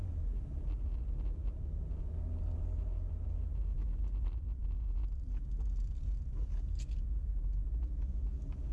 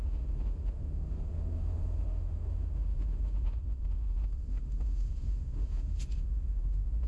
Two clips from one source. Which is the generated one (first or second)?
second